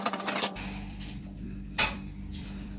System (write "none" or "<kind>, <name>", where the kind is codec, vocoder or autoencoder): vocoder, BigVGAN v2